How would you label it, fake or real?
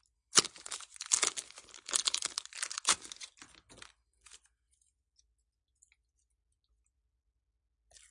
real